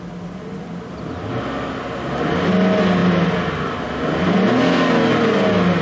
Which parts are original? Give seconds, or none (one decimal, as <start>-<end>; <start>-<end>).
0.0-5.8